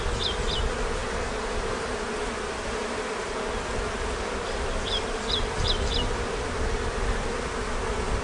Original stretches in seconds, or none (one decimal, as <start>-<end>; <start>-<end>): 0.0-1.0; 5.9-8.2